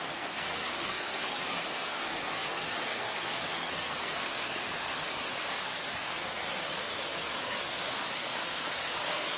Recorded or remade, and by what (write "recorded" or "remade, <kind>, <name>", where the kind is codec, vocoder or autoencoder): remade, codec, SNAC